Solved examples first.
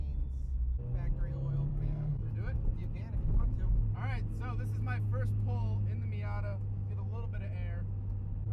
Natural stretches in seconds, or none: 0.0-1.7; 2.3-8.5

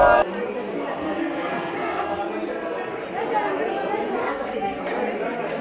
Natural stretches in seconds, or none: 0.0-1.0; 2.2-4.2; 4.8-5.6

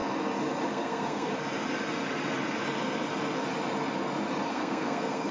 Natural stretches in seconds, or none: 0.0-0.7; 1.3-4.5

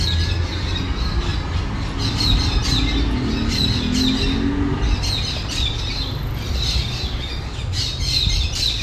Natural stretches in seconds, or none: 0.0-8.8

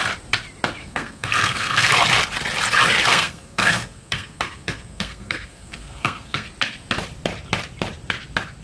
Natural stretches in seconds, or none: 0.0-0.8; 1.9-3.1; 6.5-8.6

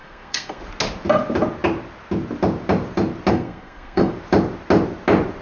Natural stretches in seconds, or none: 0.6-3.3; 4.1-5.4

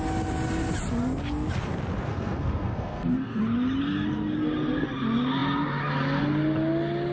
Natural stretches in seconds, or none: 0.0-2.1; 3.4-7.1

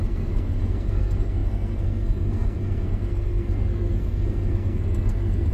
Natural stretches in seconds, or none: none